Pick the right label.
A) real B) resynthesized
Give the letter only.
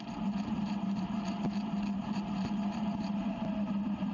B